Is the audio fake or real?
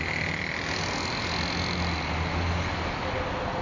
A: real